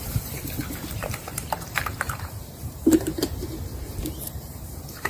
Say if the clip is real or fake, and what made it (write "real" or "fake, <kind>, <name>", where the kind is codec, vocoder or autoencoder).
fake, vocoder, BigVGAN v2